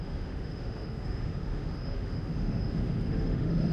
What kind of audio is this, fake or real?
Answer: fake